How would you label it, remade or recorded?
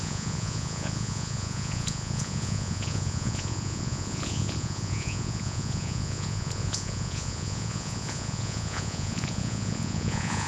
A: remade